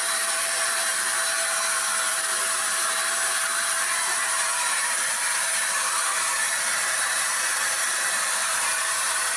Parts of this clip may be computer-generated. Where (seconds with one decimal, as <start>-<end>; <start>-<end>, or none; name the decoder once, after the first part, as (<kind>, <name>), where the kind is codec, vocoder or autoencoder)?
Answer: 0.0-1.2 (vocoder, BigVGAN v2); 2.1-9.4